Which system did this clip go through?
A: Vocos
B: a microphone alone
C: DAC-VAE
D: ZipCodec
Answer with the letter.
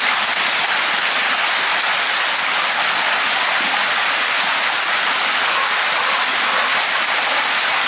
B